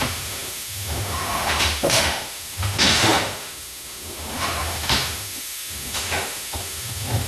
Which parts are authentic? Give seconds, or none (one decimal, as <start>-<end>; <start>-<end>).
none